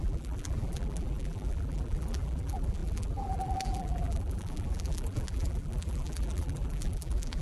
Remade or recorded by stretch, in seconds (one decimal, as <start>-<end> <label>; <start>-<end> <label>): 0.0-7.4 remade